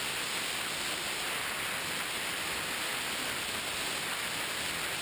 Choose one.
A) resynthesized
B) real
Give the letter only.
B